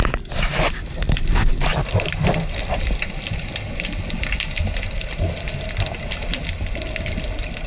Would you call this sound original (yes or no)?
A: yes